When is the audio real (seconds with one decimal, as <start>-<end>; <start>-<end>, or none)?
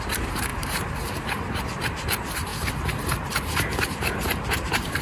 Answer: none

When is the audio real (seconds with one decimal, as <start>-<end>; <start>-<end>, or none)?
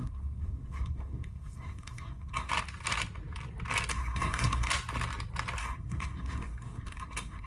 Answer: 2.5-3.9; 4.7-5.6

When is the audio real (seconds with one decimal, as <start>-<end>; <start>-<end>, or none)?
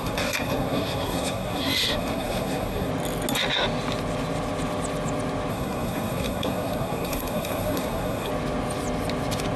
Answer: 2.9-5.5; 8.3-9.6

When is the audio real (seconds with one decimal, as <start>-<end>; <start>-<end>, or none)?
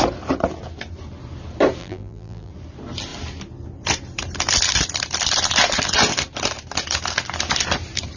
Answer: 0.0-1.8; 2.5-8.2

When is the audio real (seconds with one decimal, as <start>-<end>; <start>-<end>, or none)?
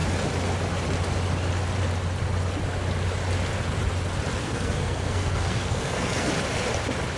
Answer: 0.0-4.4; 6.3-7.2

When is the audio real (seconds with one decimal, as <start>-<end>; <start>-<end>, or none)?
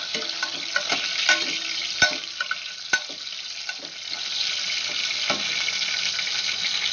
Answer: 0.0-6.9